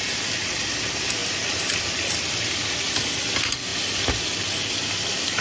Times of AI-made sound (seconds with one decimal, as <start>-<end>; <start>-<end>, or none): 0.0-3.7; 4.7-5.4